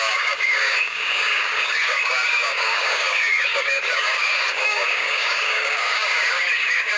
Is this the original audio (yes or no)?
no